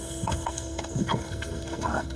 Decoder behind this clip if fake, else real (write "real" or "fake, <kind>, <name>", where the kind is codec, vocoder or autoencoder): fake, codec, SNAC